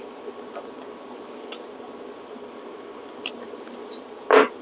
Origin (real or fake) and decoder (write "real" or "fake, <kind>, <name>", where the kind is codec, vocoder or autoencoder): real